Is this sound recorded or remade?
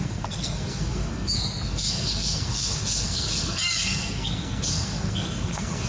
remade